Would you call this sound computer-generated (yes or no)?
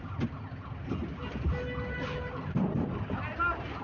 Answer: no